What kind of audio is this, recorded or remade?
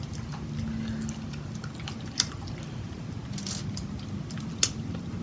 recorded